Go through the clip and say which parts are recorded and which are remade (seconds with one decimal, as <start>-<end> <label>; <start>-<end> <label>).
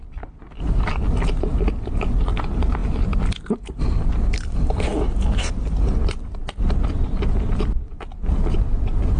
0.0-9.2 recorded